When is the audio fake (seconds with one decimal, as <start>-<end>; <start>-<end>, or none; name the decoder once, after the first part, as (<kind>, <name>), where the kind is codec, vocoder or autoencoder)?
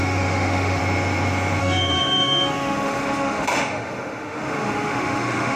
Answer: 0.0-0.8 (autoencoder, DAC-VAE); 1.6-5.6